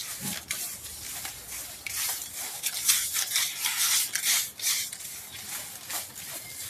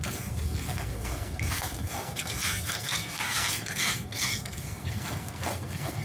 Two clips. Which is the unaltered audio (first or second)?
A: first